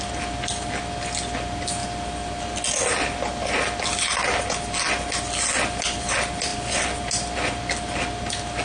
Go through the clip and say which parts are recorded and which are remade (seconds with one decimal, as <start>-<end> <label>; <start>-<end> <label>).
0.0-8.6 recorded